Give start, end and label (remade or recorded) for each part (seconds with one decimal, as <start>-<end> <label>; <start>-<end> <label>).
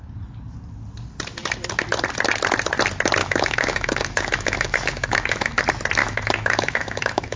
0.0-3.2 recorded; 3.2-5.6 remade; 5.6-6.0 recorded; 6.0-7.4 remade